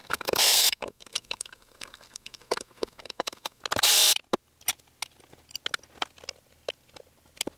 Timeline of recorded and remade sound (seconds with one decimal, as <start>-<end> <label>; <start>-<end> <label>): 0.0-3.6 remade; 3.6-7.6 recorded